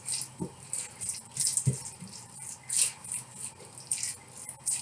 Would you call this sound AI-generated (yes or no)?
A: no